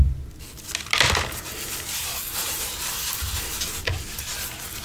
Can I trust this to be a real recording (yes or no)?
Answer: yes